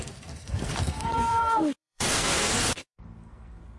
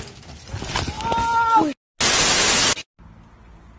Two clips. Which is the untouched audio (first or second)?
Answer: second